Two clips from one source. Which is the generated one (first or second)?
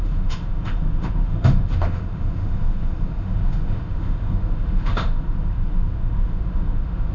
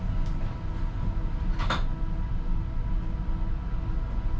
first